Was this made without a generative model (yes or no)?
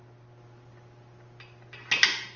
yes